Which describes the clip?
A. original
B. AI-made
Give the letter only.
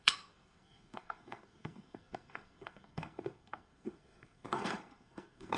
B